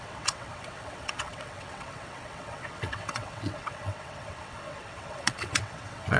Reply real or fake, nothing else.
fake